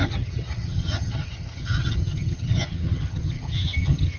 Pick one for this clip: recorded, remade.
remade